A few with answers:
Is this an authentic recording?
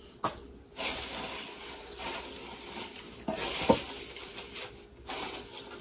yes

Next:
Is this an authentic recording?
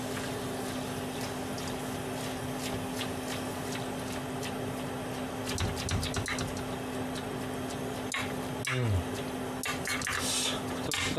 yes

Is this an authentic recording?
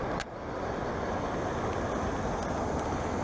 yes